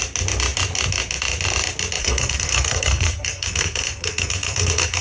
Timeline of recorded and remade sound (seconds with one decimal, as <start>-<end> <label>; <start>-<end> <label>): 0.0-2.0 recorded; 2.0-5.0 remade